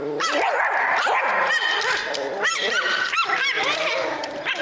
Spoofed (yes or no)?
no